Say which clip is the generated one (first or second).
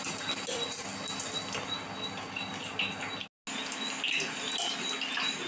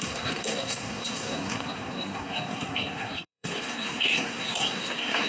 second